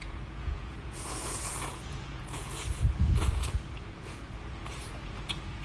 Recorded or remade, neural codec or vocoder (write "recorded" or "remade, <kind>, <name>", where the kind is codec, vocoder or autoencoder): remade, vocoder, Vocos